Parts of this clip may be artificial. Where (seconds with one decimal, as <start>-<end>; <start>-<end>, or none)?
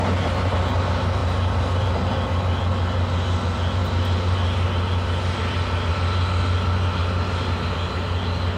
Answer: 1.2-2.0